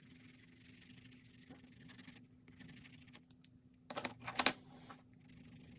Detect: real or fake real